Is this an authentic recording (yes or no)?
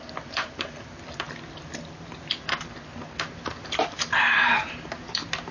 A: yes